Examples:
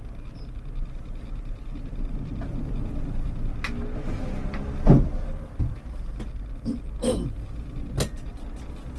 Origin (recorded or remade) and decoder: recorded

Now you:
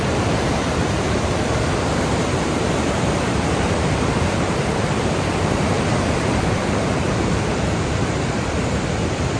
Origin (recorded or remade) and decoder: remade, vocoder, BigVGAN v2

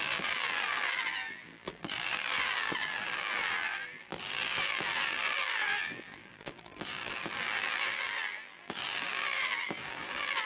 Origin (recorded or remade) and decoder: remade, vocoder, BigVGAN v2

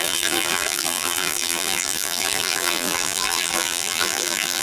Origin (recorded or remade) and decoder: remade, vocoder, BigVGAN v2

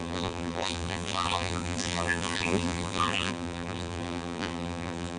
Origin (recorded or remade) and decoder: remade, vocoder, BigVGAN v2